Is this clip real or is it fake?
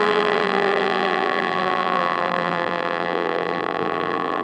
fake